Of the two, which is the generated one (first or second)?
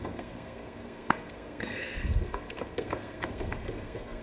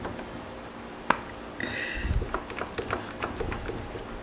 first